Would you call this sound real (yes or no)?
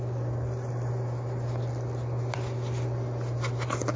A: yes